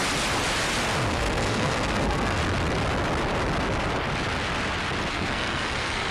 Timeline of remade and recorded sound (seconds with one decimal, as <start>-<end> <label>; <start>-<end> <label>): 0.0-1.1 recorded; 1.1-2.4 remade; 2.4-5.1 recorded; 5.1-6.1 remade